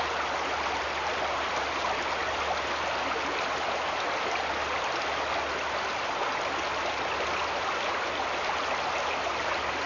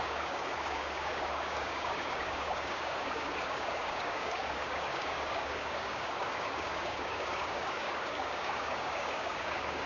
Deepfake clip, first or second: second